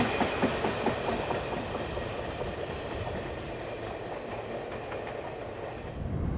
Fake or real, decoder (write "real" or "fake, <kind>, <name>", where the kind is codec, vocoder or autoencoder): real